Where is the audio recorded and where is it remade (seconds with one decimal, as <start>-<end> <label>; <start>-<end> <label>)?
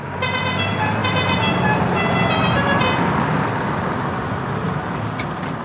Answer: 0.0-5.6 recorded